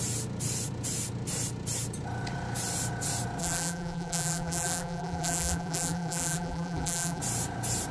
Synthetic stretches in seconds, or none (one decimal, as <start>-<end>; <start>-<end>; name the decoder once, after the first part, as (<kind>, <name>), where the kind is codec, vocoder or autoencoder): 3.4-7.2 (vocoder, BigVGAN v2)